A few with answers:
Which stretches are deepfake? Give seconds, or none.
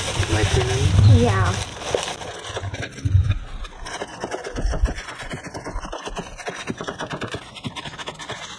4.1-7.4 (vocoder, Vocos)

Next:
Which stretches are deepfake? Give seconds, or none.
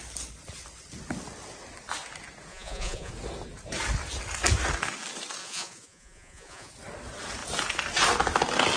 2.5-3.1 (vocoder, Vocos); 5.4-6.7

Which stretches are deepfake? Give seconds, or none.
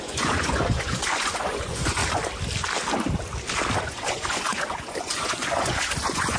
0.0-2.0 (vocoder, Vocos); 3.8-6.4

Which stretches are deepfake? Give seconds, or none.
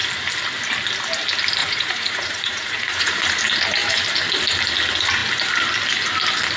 1.6-3.4 (vocoder, Vocos)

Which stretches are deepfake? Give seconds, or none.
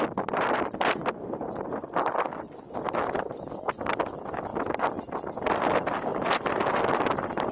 none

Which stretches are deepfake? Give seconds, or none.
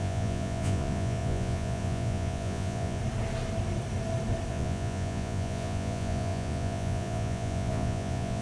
0.0-3.0 (vocoder, Vocos); 4.5-8.4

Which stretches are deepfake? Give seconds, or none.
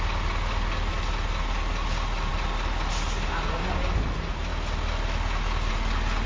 none